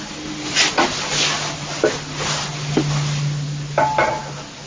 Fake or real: real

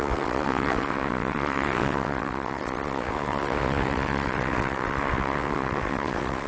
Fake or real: fake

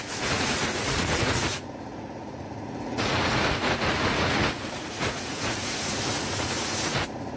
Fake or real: fake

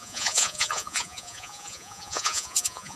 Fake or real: fake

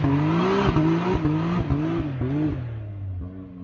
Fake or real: real